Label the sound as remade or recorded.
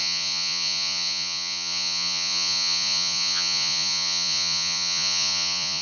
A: remade